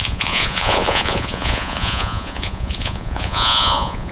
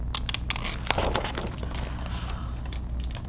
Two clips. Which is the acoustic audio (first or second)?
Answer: second